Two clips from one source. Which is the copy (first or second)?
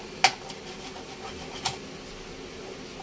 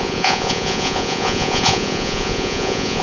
second